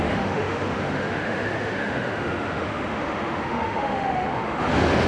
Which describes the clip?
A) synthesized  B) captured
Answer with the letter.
A